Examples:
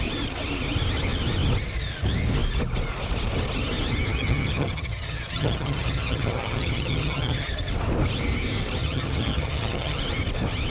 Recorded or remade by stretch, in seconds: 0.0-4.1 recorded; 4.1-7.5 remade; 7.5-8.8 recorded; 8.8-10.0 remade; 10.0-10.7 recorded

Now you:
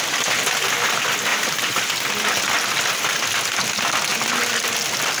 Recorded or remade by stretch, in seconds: 0.0-1.3 recorded; 1.3-1.9 remade; 1.9-5.2 recorded

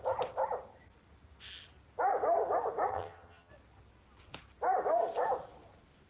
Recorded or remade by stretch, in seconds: 0.0-2.9 recorded; 2.9-3.5 remade; 3.5-6.1 recorded

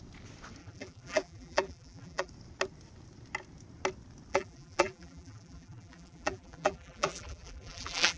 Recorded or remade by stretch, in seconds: 0.0-0.6 recorded; 0.6-2.3 remade; 2.3-4.3 recorded; 4.3-8.2 remade

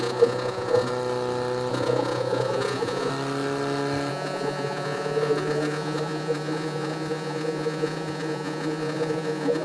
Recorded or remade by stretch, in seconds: 0.0-0.9 remade; 0.9-1.7 recorded; 1.7-3.1 remade; 3.1-4.1 recorded; 4.1-9.6 remade

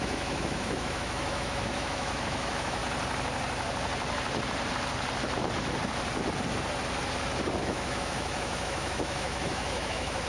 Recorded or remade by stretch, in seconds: 0.0-2.8 remade; 2.8-7.6 recorded; 7.6-10.3 remade